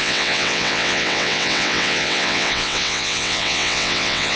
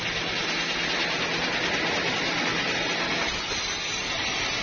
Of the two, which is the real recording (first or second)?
second